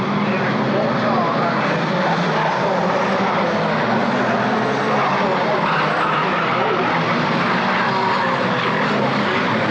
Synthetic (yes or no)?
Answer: no